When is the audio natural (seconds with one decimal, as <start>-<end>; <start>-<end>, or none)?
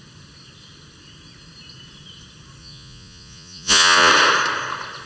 0.0-2.6; 4.1-5.1